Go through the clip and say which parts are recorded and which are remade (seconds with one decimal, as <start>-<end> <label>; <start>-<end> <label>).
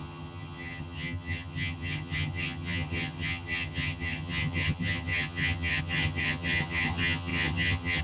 0.0-8.0 remade